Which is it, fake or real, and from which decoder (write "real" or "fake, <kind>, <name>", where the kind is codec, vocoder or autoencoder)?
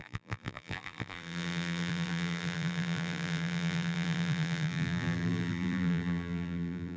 fake, vocoder, BigVGAN v2